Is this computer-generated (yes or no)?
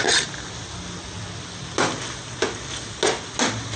no